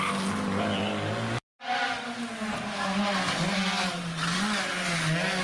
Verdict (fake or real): real